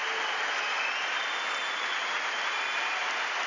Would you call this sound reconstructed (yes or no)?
no